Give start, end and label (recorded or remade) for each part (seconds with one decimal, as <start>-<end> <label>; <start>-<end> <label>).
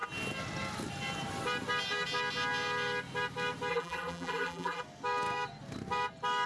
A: 0.0-3.7 recorded; 3.7-4.8 remade; 4.8-6.5 recorded